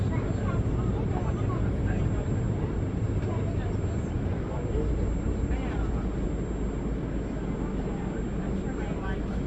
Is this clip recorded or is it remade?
recorded